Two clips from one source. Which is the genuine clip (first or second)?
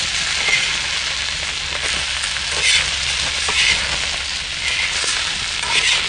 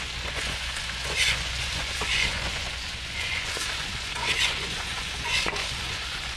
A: first